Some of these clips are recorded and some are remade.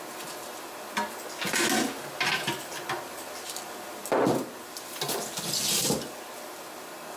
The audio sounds recorded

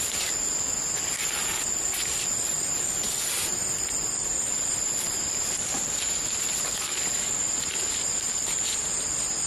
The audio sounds recorded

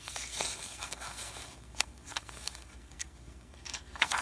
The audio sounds remade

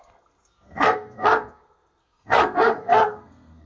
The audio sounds remade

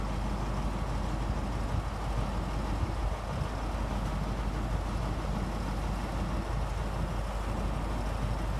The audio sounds recorded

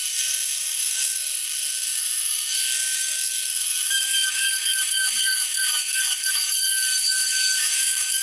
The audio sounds remade